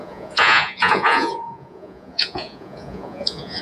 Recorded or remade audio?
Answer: remade